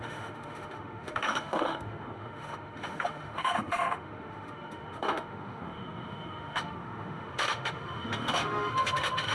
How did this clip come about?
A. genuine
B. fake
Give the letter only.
B